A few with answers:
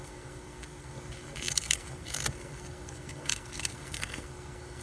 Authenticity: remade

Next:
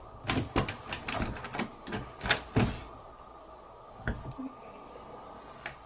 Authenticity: recorded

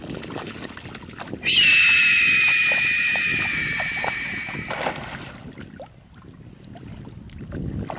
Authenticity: recorded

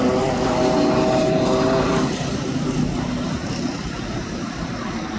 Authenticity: recorded